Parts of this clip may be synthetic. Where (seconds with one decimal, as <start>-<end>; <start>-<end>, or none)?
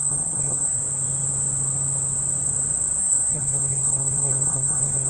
0.0-0.8; 3.0-5.1